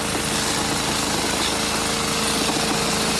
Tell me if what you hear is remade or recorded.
recorded